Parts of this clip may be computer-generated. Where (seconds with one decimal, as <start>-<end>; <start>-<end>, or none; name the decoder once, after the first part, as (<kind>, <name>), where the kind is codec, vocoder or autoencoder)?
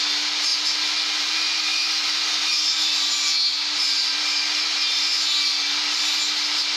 0.0-0.5 (vocoder, BigVGAN v2); 1.2-6.8